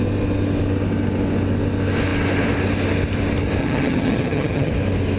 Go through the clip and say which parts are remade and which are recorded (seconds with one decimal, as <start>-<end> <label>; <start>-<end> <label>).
0.0-3.6 recorded; 3.6-4.7 remade; 4.7-5.2 recorded